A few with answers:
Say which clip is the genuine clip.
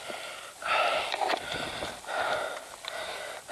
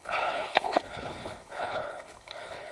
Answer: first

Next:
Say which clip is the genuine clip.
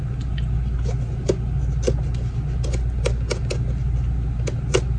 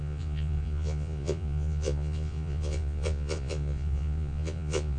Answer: first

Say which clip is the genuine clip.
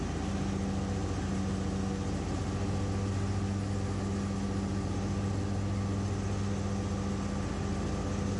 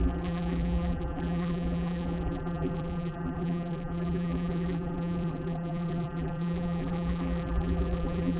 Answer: first